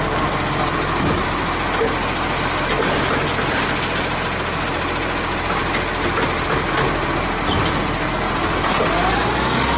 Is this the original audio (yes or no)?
yes